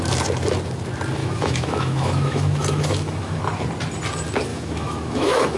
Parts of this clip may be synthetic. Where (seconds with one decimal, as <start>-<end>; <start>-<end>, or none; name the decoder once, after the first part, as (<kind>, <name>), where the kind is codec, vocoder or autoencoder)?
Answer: 1.2-3.4 (autoencoder, DAC-VAE); 4.5-5.6